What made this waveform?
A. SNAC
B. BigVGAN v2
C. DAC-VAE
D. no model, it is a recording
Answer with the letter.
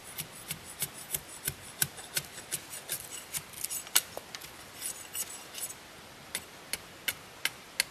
D